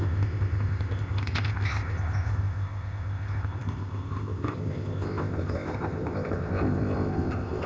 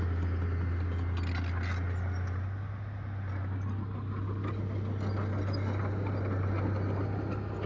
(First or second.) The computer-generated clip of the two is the first